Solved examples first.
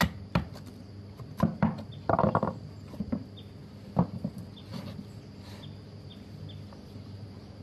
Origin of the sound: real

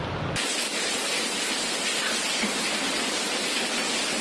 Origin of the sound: real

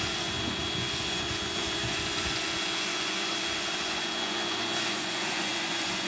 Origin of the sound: fake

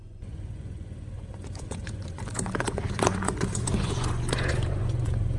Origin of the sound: fake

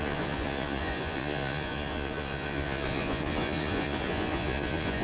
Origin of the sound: fake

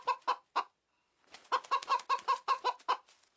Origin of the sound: real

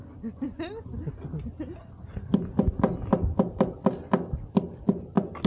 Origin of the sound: real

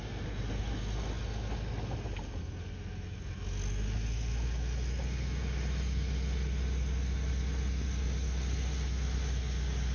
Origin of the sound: real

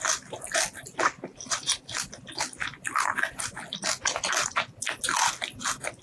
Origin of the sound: real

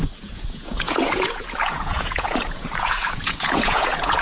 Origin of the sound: fake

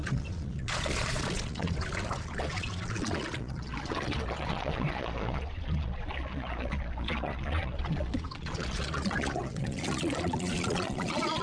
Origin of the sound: fake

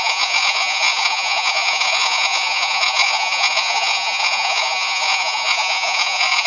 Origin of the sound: fake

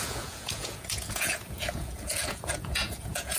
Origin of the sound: fake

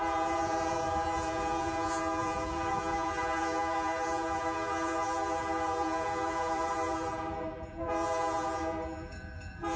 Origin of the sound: fake